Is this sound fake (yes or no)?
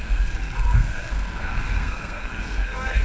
yes